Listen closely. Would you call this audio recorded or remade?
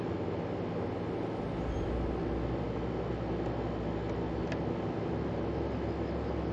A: recorded